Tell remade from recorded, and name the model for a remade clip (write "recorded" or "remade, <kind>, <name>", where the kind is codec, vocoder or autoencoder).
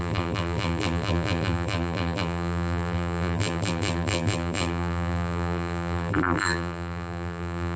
remade, vocoder, BigVGAN v2